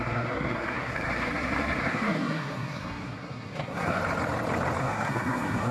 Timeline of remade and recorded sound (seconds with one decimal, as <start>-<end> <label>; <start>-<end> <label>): 0.0-4.0 remade; 4.0-4.8 recorded; 4.8-5.7 remade